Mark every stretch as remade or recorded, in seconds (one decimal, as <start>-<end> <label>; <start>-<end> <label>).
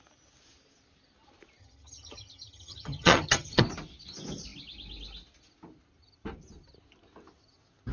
0.0-1.6 recorded; 1.6-3.6 remade; 3.6-7.9 recorded